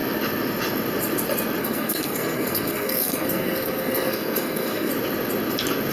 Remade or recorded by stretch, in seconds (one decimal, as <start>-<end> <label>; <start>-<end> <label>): 0.0-1.6 recorded; 1.6-4.9 remade; 4.9-5.9 recorded